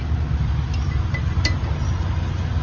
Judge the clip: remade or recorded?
recorded